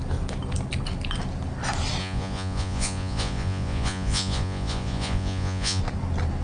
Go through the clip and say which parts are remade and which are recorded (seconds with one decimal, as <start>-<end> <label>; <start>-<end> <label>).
0.0-2.0 recorded; 2.0-5.8 remade; 5.8-6.4 recorded